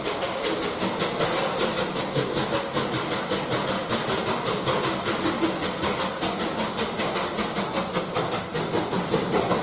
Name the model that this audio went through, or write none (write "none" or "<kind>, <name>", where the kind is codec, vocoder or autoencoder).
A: none